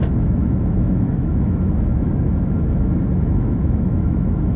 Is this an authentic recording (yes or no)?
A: no